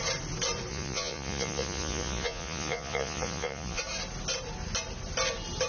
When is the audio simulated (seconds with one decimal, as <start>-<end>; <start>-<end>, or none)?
0.7-3.8